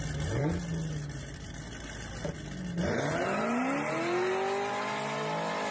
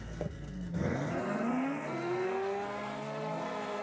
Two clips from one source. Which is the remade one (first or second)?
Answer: second